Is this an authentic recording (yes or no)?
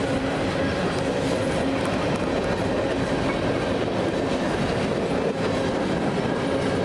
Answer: yes